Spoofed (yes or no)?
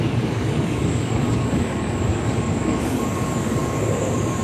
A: yes